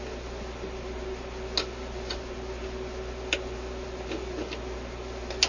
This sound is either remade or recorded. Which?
recorded